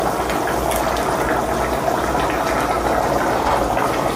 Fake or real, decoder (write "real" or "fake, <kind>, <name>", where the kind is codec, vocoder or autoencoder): real